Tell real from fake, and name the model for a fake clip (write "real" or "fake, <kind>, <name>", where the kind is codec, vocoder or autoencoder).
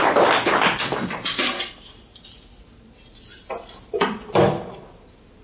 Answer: real